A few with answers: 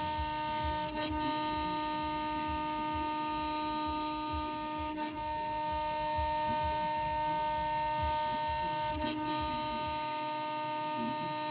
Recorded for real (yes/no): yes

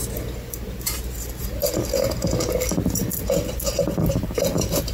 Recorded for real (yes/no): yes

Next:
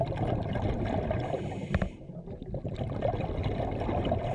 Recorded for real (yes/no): yes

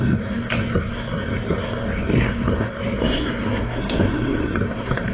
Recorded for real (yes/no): no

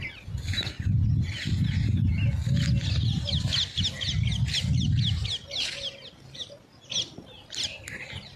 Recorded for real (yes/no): yes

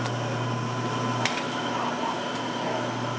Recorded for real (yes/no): yes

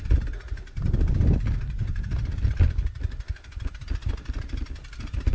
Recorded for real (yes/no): yes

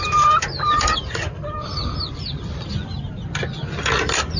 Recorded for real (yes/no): no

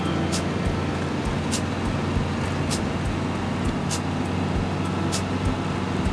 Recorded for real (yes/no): yes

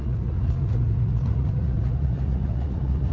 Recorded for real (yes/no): no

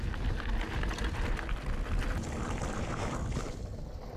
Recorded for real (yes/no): yes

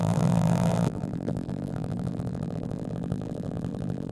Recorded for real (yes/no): no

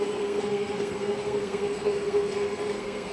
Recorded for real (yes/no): no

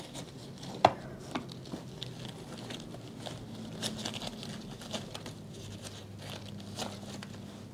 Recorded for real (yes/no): yes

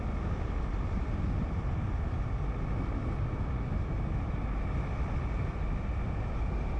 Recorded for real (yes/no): yes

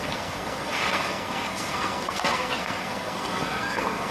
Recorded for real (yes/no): no